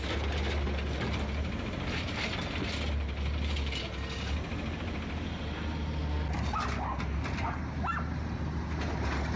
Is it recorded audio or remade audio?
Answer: recorded